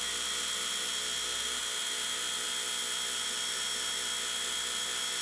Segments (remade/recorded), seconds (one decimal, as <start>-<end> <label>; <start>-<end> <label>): 0.0-5.2 recorded